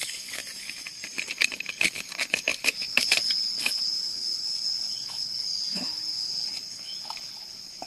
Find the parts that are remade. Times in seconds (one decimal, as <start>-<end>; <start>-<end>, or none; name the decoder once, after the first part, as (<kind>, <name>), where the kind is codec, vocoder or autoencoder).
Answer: 0.0-0.4 (codec, HILCodec); 1.3-7.9